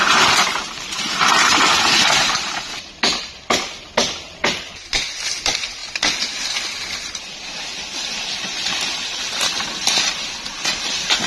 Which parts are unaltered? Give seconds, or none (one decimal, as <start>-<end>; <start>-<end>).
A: 0.0-11.3